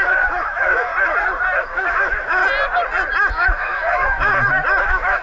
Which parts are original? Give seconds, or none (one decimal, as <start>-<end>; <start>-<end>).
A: 0.9-1.6; 2.4-3.3; 4.3-4.8

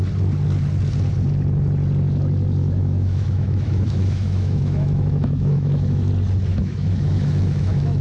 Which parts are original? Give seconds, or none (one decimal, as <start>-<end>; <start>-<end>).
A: 0.0-2.6; 6.1-6.5

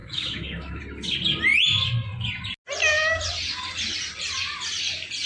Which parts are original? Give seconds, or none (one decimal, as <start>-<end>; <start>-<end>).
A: 0.8-5.3

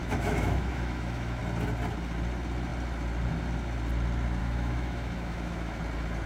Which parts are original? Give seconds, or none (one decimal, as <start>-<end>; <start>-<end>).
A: 1.4-4.4; 5.8-6.3

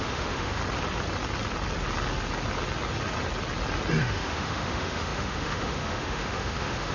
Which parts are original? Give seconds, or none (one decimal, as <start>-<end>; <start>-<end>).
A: 0.6-4.0